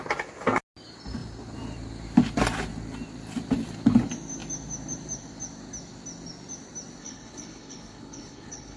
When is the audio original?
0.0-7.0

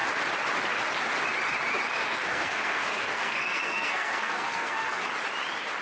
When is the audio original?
0.0-2.0; 5.0-5.8

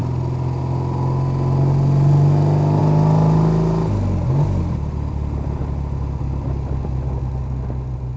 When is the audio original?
0.0-8.2

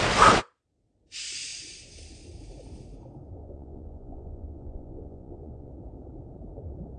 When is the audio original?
0.0-3.4; 5.7-7.0